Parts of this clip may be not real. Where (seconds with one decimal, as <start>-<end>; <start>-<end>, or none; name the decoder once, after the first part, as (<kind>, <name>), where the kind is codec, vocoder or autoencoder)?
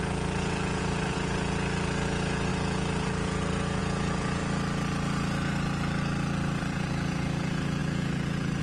0.0-4.4 (vocoder, Vocos); 6.6-8.6